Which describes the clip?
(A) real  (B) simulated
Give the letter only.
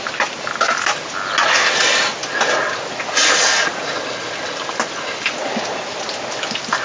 A